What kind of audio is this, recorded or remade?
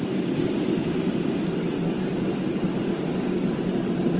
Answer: recorded